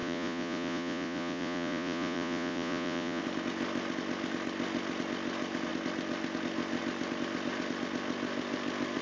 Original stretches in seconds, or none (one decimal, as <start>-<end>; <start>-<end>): 3.2-9.0